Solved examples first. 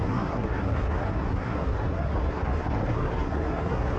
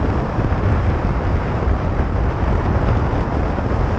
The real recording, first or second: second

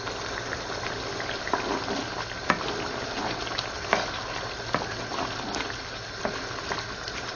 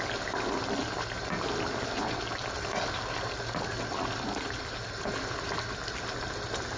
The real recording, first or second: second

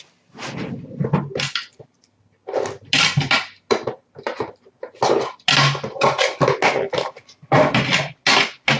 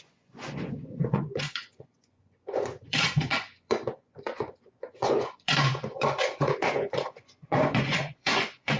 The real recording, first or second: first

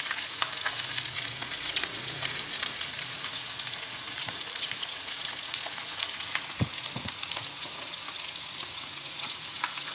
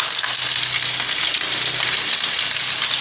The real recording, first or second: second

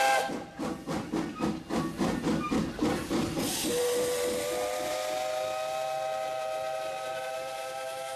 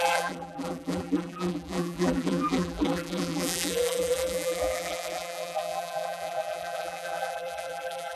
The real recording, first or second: first